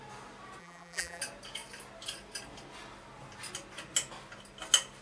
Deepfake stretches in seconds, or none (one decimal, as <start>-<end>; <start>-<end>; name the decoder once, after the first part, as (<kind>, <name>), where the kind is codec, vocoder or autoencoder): 0.6-1.2 (vocoder, BigVGAN v2)